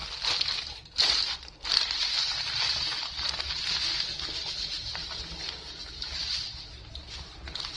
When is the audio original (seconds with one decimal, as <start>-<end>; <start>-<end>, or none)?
0.0-7.8